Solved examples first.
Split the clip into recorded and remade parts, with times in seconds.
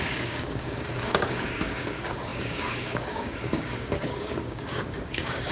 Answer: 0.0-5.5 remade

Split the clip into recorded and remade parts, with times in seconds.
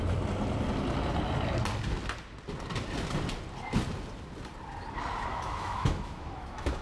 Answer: 0.0-5.3 recorded; 5.3-6.8 remade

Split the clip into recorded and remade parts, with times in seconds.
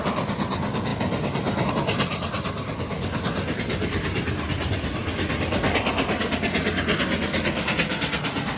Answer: 0.0-0.9 recorded; 0.9-1.7 remade; 1.7-8.6 recorded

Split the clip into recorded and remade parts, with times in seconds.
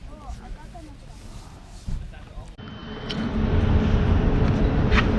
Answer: 0.0-0.7 remade; 0.7-2.8 recorded; 2.8-3.7 remade; 3.7-5.2 recorded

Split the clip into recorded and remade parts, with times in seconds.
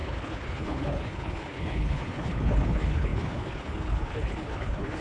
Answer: 0.0-5.0 remade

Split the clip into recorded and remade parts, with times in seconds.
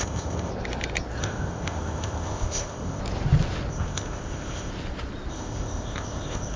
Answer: 0.0-0.5 remade; 0.5-1.2 recorded; 1.2-3.0 remade; 3.0-3.7 recorded; 3.7-4.7 remade; 4.7-5.3 recorded; 5.3-6.6 remade